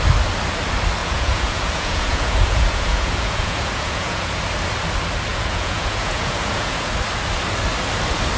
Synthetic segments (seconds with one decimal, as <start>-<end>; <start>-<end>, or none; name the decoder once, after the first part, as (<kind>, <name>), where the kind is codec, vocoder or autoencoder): 1.0-4.4 (vocoder, Vocos); 5.3-6.9